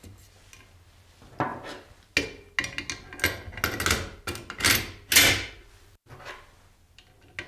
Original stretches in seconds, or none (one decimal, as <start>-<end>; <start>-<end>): 0.0-7.5

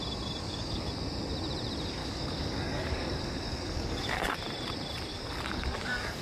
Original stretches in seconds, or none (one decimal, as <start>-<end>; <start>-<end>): 0.0-0.4; 0.9-2.0; 4.2-5.1

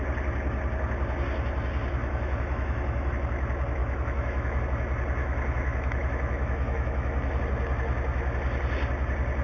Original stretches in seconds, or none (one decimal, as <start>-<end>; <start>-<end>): 0.0-2.0; 3.1-3.8; 4.6-5.2; 7.4-9.4

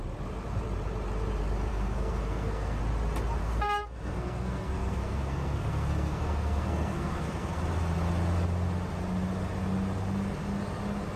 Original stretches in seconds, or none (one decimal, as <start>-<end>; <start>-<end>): 0.0-1.7; 2.8-3.4; 7.6-11.2